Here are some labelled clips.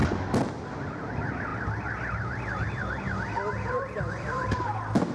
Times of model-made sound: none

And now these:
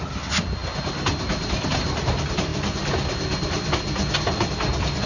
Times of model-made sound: none

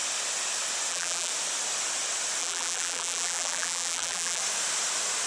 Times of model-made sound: 0.9-1.3 (vocoder, BigVGAN v2); 2.4-4.4

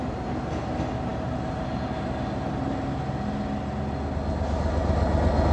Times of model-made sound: none

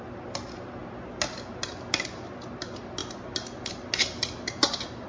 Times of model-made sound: none

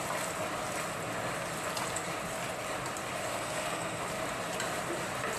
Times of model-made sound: 3.3-4.0 (codec, SNAC)

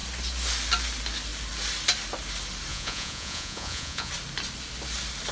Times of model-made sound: 2.7-4.1 (vocoder, Vocos)